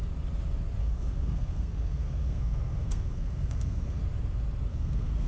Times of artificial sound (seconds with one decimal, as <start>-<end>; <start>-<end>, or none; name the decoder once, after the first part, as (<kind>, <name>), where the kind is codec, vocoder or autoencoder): 0.8-4.0 (codec, SNAC); 4.7-5.3